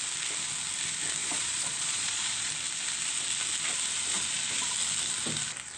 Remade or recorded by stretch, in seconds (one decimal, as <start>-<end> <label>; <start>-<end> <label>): 0.0-1.2 recorded; 1.2-2.5 remade; 2.5-5.8 recorded